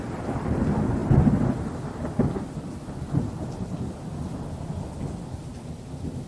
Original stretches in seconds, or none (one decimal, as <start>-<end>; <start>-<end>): 0.0-6.3